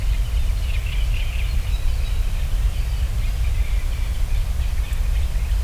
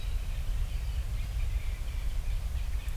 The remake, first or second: second